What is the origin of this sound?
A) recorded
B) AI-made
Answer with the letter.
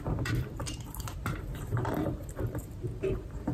B